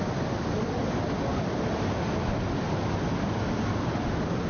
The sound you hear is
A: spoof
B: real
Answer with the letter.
B